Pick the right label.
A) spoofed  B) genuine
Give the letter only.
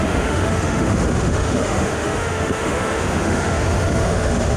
A